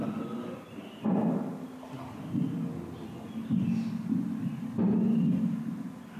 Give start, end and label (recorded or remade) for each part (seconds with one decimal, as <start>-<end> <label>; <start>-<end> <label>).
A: 0.0-1.1 recorded; 1.1-4.8 remade; 4.8-6.2 recorded